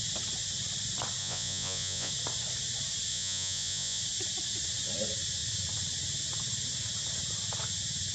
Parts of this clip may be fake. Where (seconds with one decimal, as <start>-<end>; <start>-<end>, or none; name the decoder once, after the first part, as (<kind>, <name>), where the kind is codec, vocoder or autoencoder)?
1.2-2.1 (vocoder, Vocos); 3.1-4.0